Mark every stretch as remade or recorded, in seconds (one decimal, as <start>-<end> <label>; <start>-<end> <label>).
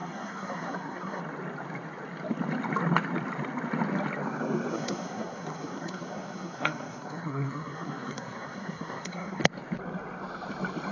0.0-1.2 remade; 1.2-4.7 recorded; 4.7-9.4 remade; 9.4-10.9 recorded